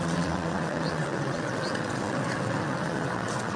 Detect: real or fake fake